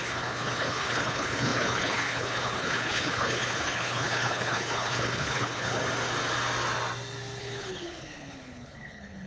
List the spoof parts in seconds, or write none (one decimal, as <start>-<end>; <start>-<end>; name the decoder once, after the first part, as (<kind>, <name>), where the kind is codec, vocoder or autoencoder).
0.0-5.8 (codec, HILCodec); 7.4-9.3